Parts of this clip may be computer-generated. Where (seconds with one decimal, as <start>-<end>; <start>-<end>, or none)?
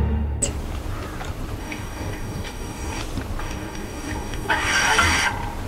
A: 1.6-3.0; 3.4-5.3